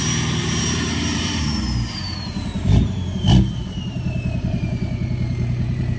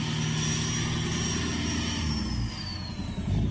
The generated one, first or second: first